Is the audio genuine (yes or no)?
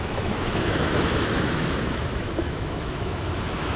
no